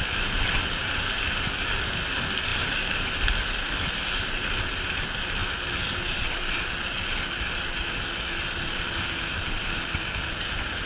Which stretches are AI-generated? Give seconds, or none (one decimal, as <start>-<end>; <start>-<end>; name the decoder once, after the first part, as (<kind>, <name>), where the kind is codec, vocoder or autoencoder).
none